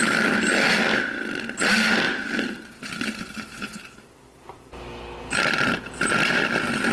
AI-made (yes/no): no